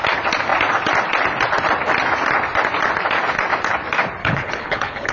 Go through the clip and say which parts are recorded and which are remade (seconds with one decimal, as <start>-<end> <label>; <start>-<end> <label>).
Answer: 0.0-4.2 recorded; 4.2-5.1 remade